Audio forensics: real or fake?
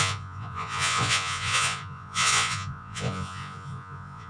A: fake